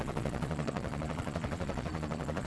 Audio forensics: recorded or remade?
remade